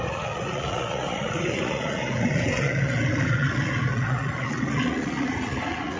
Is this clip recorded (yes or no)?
no